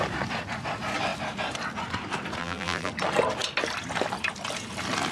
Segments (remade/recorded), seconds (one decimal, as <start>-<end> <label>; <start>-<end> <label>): 0.0-2.4 recorded; 2.4-2.9 remade; 2.9-5.1 recorded